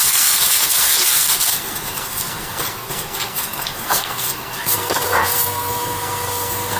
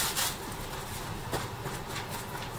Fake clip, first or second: first